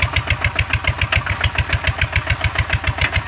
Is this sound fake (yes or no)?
no